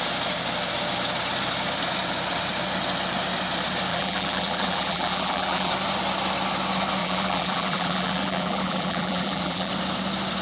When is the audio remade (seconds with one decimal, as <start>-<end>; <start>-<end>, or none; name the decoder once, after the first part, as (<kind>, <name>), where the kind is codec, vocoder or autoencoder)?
3.9-5.7 (vocoder, BigVGAN v2); 7.0-9.7